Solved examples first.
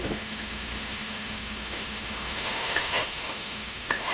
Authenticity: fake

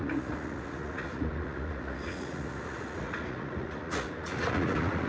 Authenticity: fake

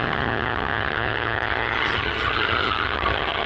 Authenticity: fake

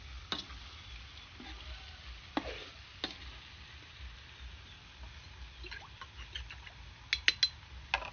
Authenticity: real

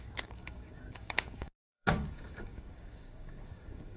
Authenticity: fake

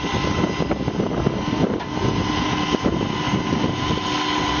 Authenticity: real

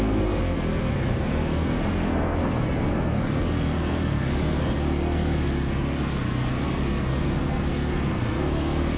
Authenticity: fake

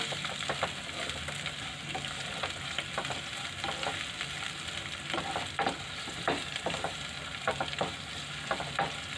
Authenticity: fake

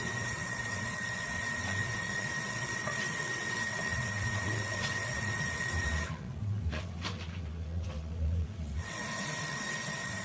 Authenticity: fake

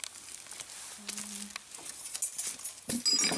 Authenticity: real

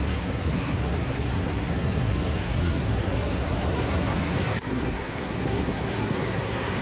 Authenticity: fake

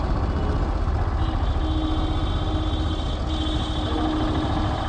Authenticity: real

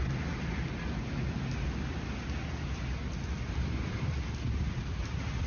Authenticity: real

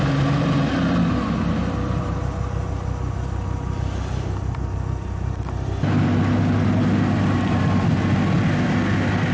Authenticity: real